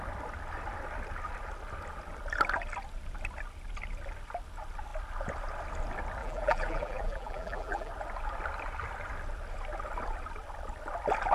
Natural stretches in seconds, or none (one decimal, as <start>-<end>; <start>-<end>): 0.0-6.2; 7.9-11.3